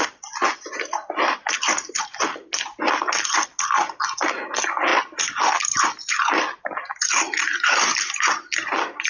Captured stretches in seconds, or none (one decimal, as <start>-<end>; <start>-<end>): 0.0-9.1